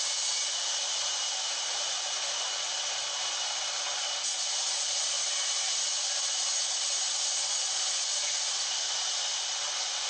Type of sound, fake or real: real